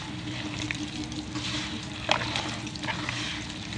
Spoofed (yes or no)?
yes